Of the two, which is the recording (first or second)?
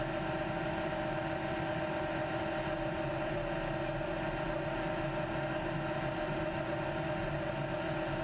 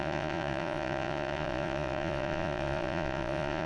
first